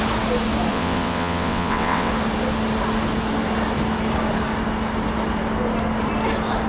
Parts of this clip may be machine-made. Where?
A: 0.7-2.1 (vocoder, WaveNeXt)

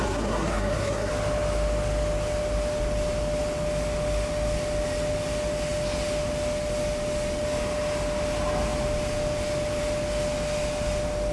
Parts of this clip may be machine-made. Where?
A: 0.0-1.1 (codec, SNAC)

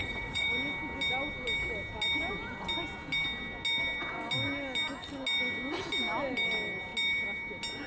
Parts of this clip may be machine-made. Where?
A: 0.0-0.5 (vocoder, Vocos)

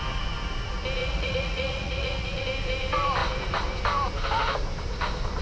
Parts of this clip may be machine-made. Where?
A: 1.0-2.4 (vocoder, Vocos)

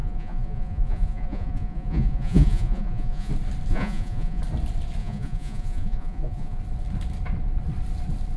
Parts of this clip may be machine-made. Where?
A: 0.0-3.3 (vocoder, Vocos); 3.7-4.4; 5.0-6.6

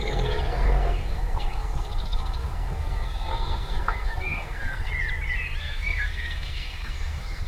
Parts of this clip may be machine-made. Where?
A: 0.0-4.9 (codec, SNAC); 5.6-7.5